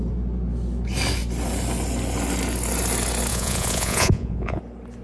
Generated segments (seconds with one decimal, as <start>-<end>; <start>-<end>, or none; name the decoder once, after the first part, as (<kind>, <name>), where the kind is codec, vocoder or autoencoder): 3.3-4.6 (vocoder, Vocos)